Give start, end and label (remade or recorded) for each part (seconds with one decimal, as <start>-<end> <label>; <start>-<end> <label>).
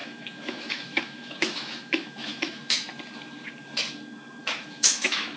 0.0-2.9 remade; 2.9-4.4 recorded; 4.4-5.4 remade